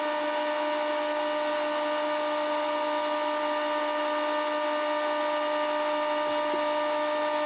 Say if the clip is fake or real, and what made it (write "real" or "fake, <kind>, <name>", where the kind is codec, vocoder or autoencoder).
real